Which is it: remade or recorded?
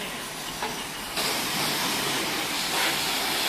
recorded